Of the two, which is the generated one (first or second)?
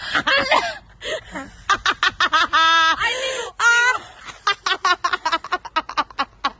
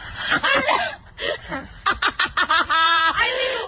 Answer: second